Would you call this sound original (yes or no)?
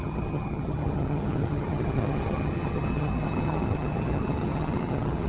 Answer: no